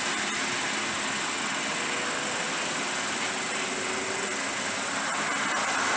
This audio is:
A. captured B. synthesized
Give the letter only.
A